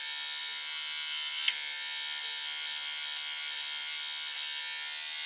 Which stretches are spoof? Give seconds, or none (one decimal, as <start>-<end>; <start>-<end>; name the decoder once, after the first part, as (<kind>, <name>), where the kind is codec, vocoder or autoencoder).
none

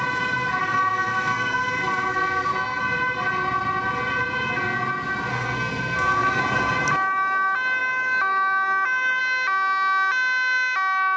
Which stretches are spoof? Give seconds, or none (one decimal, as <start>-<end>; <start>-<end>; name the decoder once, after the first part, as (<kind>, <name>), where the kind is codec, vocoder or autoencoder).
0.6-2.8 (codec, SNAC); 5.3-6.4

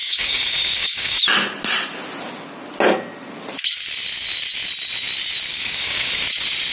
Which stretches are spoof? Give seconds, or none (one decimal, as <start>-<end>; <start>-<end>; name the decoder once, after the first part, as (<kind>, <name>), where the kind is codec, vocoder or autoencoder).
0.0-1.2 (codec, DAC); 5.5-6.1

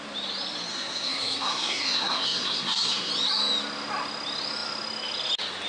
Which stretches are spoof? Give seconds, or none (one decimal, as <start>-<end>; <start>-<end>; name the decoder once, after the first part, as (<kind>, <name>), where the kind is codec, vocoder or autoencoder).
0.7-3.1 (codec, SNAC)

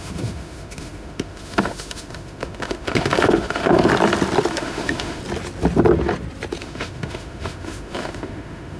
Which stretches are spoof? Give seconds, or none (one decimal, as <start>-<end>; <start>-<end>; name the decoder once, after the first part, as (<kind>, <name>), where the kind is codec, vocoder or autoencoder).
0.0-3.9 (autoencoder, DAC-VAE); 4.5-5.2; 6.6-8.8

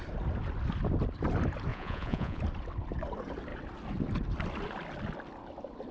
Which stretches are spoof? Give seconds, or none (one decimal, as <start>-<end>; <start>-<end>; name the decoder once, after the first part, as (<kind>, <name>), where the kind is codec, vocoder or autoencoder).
1.7-2.4 (vocoder, Vocos)

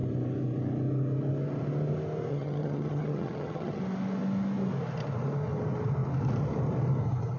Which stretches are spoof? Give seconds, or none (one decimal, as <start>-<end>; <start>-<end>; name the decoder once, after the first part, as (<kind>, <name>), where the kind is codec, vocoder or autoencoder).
2.3-3.8 (vocoder, HiFi-GAN)